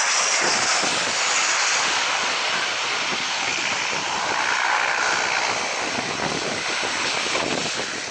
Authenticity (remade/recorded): recorded